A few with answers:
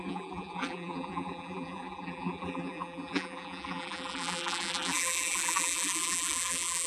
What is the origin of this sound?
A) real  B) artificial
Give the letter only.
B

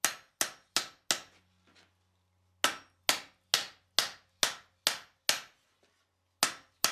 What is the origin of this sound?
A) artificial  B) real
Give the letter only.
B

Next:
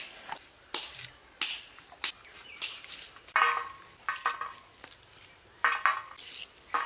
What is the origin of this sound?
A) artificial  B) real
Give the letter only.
B